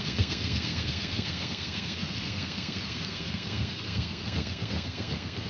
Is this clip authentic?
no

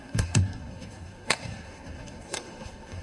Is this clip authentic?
no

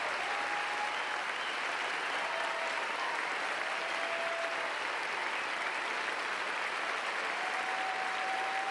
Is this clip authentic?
yes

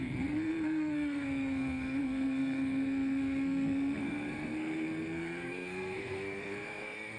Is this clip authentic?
no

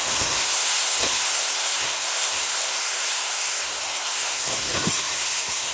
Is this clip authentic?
no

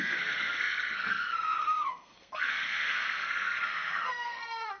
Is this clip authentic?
no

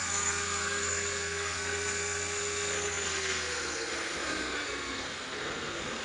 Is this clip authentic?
no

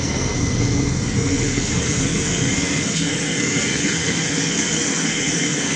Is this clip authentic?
no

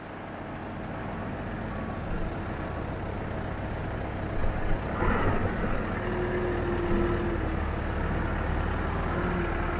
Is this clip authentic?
yes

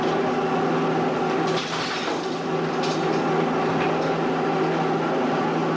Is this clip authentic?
yes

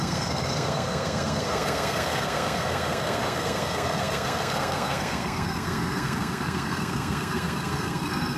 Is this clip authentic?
no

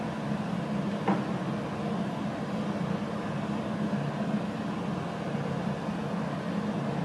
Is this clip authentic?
yes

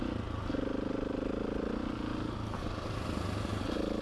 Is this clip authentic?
yes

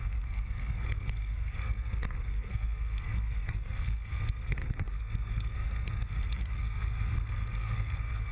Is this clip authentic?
no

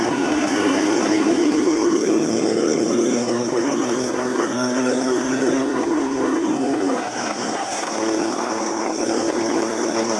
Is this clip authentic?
no